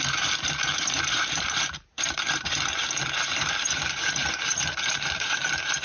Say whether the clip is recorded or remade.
remade